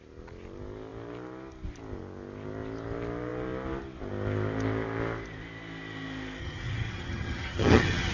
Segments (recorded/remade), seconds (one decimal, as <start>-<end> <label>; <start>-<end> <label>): 0.0-6.4 recorded; 6.4-8.1 remade